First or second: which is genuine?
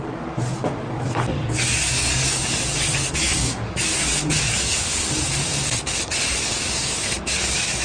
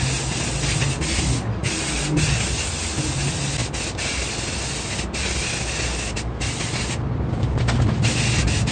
second